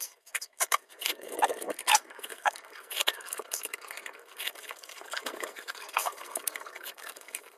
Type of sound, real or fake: fake